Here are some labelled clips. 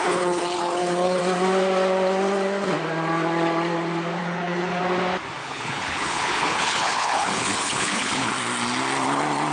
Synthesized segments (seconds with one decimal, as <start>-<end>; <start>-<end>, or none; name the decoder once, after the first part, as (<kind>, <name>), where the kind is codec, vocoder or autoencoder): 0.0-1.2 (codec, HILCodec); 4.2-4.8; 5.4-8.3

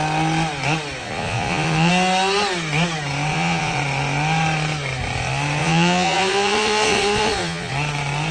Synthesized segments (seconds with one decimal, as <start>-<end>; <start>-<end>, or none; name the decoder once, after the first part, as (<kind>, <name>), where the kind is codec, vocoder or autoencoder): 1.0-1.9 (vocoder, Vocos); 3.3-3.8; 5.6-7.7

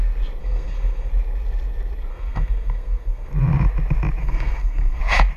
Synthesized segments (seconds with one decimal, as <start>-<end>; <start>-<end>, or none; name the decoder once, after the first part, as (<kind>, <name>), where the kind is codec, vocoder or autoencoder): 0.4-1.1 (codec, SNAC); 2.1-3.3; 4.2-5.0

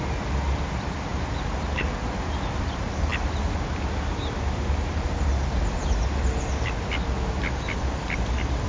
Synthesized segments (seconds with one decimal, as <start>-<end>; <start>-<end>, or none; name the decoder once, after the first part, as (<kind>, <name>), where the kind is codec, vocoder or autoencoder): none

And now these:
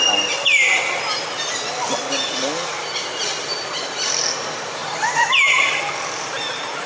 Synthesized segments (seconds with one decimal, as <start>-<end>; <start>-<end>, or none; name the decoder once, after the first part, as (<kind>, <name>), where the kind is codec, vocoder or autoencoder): 4.8-5.8 (vocoder, BigVGAN v2)